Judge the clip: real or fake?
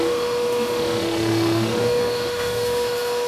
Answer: fake